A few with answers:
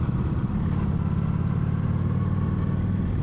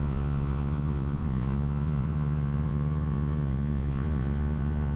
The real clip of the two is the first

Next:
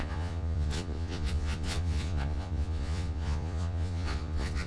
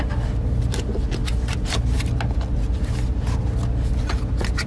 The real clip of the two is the second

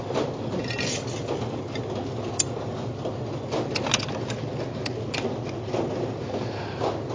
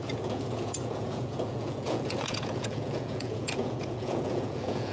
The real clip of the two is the first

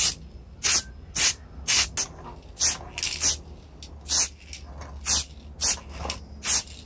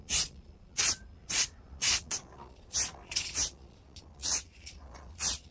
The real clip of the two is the first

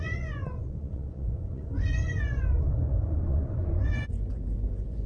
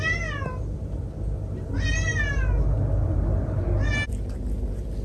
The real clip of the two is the second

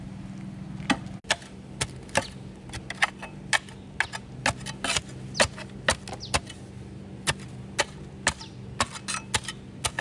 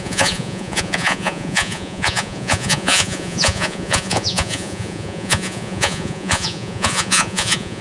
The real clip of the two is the first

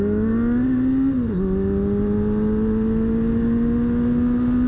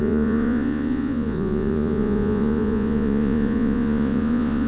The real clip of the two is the first